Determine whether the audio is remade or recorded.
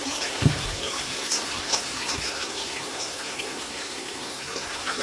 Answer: remade